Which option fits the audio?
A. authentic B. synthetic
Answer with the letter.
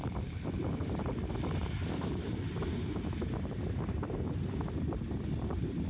B